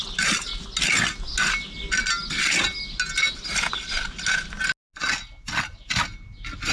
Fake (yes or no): no